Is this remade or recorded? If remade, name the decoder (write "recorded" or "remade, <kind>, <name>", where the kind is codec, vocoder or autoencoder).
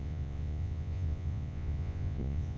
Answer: remade, vocoder, Vocos